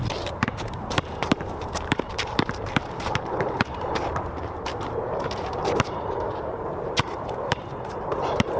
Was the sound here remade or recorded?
remade